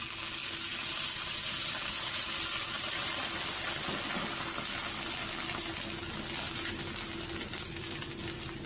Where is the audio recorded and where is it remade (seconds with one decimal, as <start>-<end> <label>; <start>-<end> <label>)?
0.0-8.7 recorded